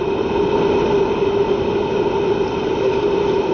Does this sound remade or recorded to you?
recorded